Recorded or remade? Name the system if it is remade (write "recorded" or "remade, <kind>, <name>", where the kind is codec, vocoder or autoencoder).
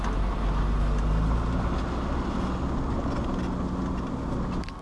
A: recorded